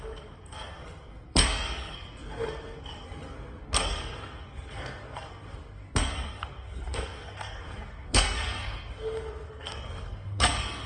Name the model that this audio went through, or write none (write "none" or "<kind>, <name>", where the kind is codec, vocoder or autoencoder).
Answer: codec, SNAC